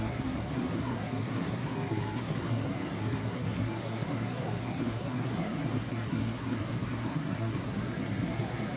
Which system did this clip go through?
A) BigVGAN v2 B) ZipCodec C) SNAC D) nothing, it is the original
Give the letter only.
C